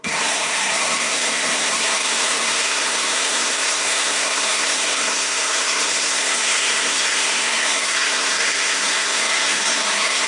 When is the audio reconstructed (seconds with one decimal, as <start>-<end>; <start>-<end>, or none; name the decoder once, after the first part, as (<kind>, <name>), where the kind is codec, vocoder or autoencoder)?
0.0-10.3 (codec, SNAC)